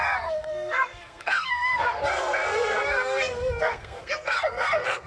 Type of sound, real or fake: fake